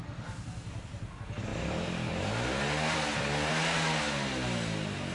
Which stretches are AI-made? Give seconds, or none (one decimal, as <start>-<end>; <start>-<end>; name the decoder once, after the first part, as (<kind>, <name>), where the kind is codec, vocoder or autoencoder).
none